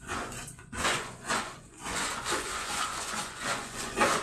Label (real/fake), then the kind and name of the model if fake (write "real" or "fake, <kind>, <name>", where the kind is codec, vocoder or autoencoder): fake, vocoder, Vocos